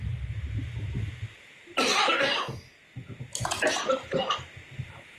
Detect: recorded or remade recorded